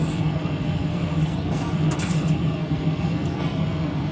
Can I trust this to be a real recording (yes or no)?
no